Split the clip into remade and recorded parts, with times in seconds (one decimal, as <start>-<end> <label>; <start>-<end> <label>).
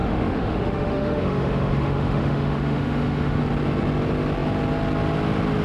0.0-3.4 remade; 3.4-5.6 recorded